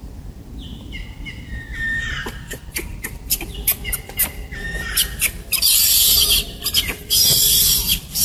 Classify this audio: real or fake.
fake